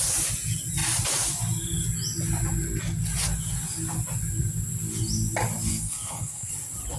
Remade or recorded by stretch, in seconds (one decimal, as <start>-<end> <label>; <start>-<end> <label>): 0.0-5.7 recorded; 5.7-6.5 remade; 6.5-7.0 recorded